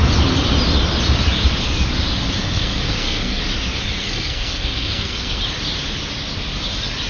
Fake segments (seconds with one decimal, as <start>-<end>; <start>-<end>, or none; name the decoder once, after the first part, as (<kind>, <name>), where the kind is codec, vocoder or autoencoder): 2.4-3.4 (codec, SNAC); 4.0-5.4